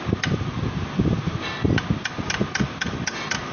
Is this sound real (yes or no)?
yes